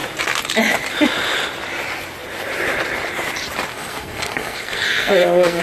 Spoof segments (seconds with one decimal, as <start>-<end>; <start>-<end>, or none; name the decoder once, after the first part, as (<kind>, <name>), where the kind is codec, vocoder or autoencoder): 3.7-5.6 (codec, SNAC)